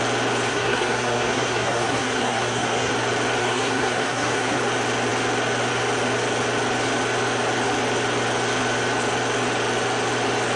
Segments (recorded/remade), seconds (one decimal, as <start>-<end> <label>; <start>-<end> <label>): 0.0-0.5 recorded; 0.5-2.9 remade; 2.9-3.4 recorded; 3.4-4.6 remade; 4.6-10.6 recorded